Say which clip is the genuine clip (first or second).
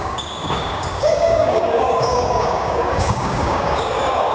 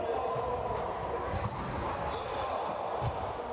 second